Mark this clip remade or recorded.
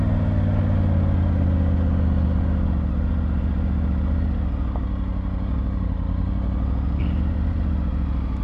recorded